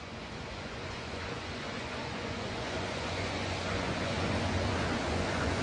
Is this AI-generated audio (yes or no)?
yes